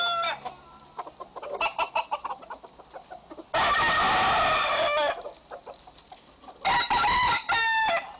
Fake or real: real